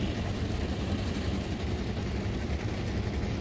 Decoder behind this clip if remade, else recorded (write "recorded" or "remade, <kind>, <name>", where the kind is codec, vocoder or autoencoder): recorded